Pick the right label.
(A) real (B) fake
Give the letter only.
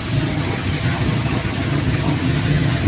B